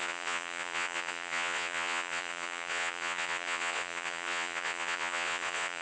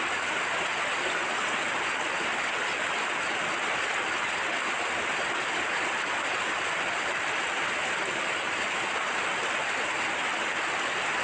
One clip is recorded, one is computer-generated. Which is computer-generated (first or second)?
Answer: first